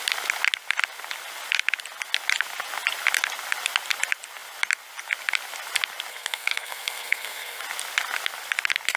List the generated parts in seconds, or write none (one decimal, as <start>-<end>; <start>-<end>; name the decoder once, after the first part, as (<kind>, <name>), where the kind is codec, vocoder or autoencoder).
6.1-7.6 (codec, SNAC)